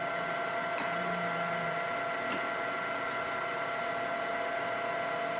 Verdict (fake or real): real